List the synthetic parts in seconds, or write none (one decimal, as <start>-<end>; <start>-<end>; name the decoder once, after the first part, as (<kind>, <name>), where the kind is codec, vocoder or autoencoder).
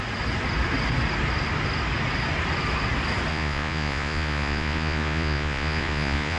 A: 3.3-6.4 (vocoder, Vocos)